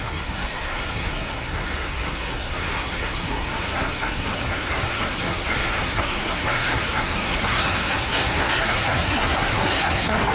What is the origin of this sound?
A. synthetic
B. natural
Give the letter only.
A